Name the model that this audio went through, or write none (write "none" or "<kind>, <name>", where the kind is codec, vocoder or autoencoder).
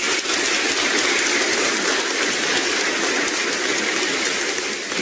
none